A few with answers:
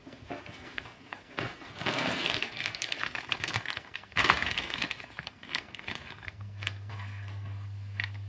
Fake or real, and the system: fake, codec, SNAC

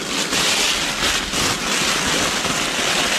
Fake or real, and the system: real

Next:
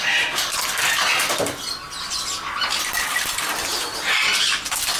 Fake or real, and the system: real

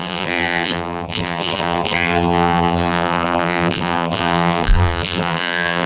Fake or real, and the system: fake, vocoder, BigVGAN v2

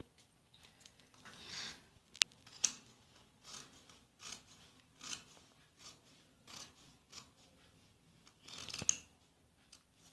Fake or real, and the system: real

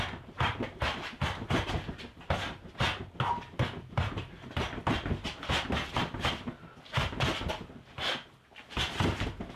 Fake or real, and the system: real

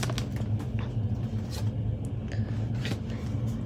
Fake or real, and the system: real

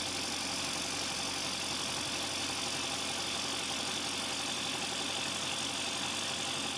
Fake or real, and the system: real